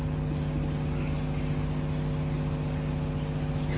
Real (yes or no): yes